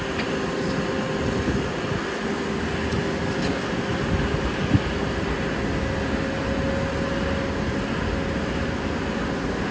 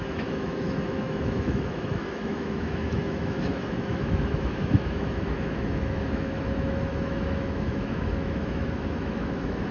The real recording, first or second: first